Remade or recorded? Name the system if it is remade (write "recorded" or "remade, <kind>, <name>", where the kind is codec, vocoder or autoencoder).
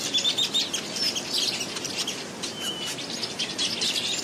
recorded